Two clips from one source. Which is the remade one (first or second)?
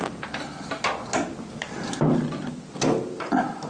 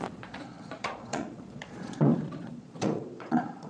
second